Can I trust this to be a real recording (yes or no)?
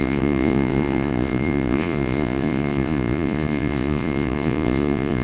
no